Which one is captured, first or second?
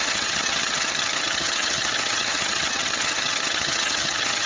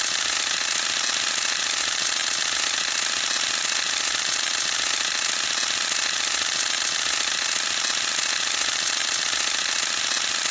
second